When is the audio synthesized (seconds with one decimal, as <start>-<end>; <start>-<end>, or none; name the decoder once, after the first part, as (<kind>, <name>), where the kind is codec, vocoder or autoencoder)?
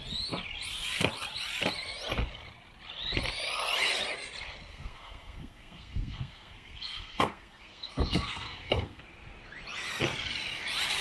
4.7-9.0 (codec, SNAC)